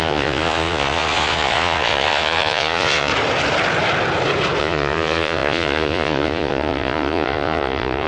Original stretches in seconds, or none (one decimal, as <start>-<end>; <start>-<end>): 3.1-4.6